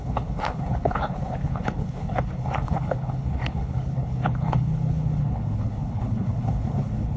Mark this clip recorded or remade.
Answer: remade